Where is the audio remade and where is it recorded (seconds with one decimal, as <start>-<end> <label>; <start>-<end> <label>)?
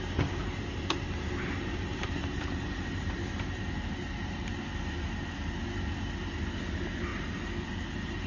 0.0-0.4 recorded; 0.4-4.6 remade; 4.6-8.3 recorded